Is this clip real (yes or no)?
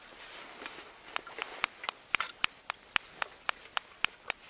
yes